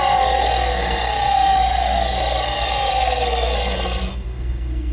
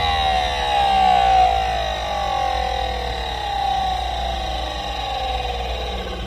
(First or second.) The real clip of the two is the second